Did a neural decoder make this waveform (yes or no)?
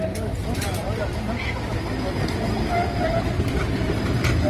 no